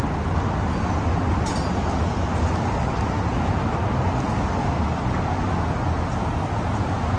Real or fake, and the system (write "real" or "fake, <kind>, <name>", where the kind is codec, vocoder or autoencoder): real